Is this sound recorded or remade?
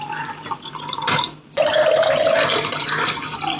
recorded